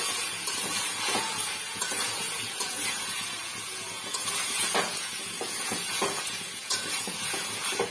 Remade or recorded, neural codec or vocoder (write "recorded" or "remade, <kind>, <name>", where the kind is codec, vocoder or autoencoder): remade, vocoder, Vocos